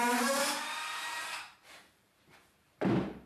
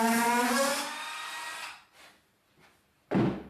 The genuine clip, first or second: second